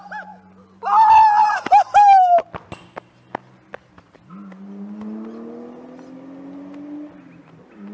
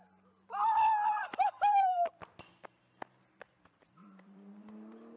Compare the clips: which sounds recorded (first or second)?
first